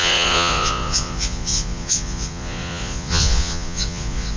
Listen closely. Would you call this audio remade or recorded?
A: remade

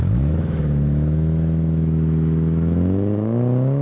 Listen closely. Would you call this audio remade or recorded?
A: remade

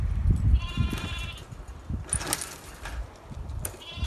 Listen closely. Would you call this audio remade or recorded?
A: recorded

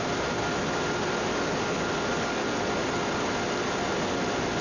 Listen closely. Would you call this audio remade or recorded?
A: recorded